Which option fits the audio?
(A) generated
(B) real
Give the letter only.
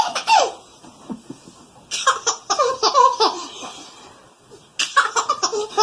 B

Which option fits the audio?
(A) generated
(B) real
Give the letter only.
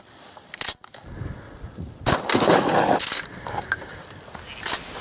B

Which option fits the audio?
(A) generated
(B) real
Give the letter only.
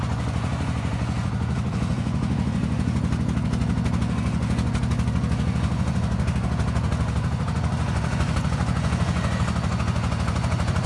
A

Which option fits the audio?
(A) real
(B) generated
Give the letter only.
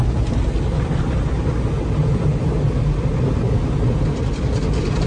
A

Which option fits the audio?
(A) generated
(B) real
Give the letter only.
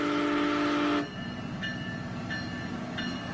B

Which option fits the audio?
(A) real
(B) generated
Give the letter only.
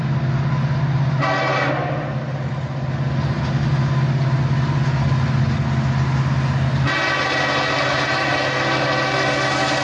A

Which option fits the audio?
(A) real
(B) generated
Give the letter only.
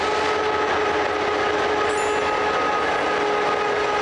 A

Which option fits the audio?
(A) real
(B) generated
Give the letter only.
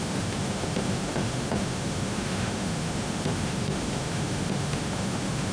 B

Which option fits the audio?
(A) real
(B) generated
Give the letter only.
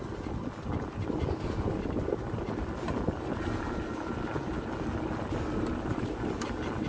A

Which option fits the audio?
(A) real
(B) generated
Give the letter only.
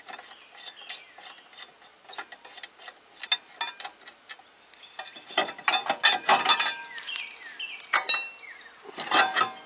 A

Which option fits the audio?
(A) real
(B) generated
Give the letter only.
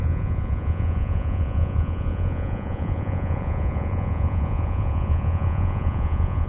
B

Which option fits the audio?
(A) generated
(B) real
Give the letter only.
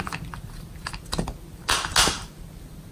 B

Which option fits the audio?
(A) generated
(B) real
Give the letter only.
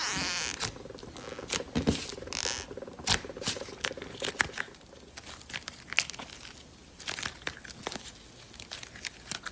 B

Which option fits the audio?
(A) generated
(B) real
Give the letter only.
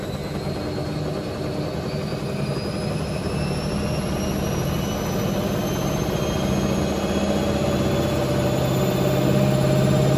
B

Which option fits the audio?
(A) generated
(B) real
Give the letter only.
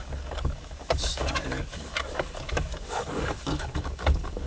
A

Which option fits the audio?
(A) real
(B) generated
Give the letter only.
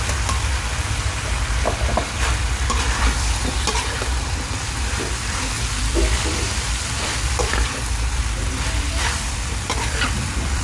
B